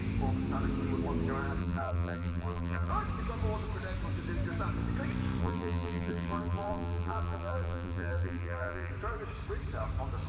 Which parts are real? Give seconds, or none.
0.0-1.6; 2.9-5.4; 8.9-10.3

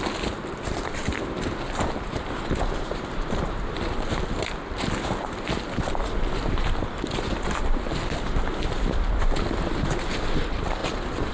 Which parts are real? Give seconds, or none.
0.0-10.8

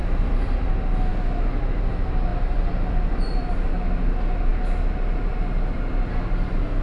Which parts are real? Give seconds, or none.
0.7-2.3; 3.7-6.8

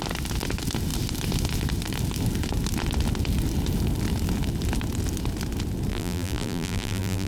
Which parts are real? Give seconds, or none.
0.0-5.9

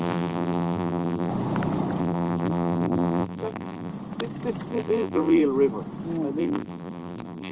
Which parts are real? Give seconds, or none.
1.3-2.0; 3.9-4.7; 5.4-6.4

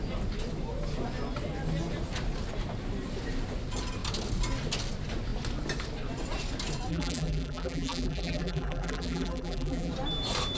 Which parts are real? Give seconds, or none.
0.0-6.9; 9.9-10.6

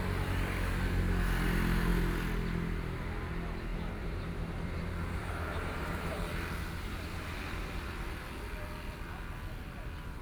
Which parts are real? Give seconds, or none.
0.0-3.7; 6.2-10.2